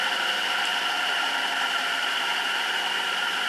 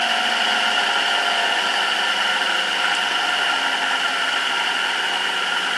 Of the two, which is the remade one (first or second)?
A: first